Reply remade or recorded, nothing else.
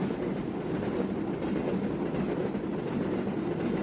recorded